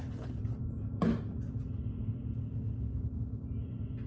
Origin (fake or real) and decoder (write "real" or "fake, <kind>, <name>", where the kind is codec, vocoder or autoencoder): real